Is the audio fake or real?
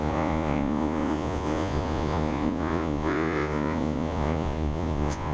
fake